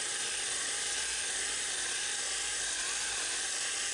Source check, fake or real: fake